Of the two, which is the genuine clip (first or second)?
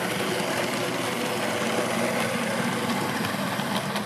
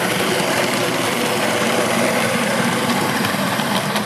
first